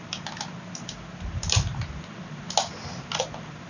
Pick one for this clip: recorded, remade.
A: recorded